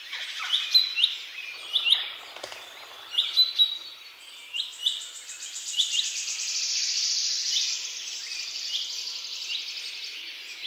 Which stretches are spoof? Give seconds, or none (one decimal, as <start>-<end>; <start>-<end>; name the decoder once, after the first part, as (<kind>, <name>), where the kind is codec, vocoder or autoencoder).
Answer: none